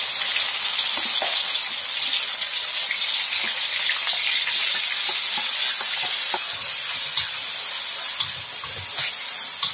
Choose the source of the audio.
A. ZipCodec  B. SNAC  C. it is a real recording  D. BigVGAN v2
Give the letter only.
C